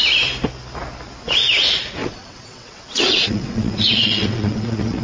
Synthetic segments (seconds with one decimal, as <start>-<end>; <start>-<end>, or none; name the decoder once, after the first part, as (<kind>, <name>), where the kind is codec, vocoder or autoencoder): 2.0-5.0 (vocoder, WaveNeXt)